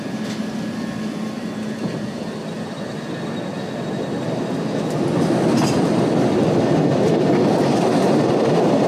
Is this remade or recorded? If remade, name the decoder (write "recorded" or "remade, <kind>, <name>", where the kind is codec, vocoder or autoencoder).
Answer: recorded